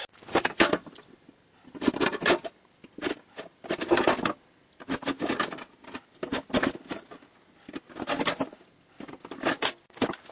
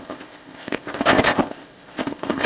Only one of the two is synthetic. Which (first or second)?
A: second